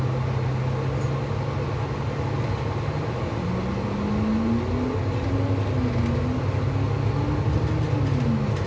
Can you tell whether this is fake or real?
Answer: real